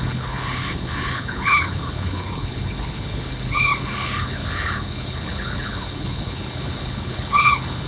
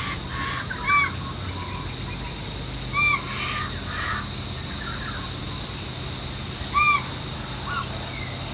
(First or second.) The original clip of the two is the second